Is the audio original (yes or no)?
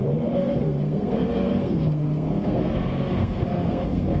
no